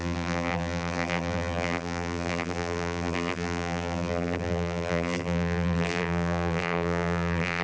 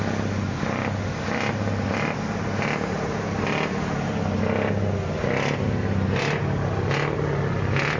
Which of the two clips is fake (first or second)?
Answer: first